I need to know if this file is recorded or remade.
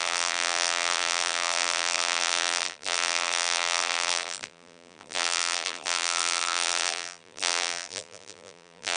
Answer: remade